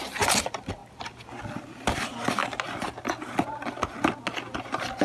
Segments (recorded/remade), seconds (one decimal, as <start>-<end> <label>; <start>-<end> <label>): 0.0-5.0 recorded